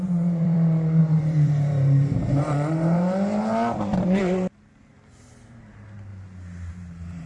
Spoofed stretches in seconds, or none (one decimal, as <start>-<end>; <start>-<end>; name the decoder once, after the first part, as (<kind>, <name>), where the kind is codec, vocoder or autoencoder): 0.0-6.1 (vocoder, BigVGAN v2); 6.7-7.3